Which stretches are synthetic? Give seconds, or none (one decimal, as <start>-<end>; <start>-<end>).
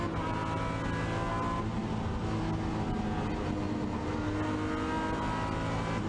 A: none